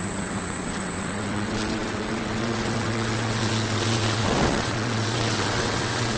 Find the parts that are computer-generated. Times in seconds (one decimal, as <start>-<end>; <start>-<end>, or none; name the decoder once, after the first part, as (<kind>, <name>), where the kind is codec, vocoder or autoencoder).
0.0-6.2 (vocoder, WaveNeXt)